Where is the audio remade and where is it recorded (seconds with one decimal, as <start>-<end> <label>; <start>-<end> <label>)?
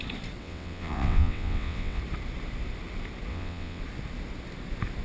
0.0-0.4 recorded; 0.4-2.0 remade; 2.0-3.3 recorded; 3.3-3.8 remade; 3.8-5.0 recorded